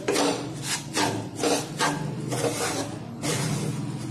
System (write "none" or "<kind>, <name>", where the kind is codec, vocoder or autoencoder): none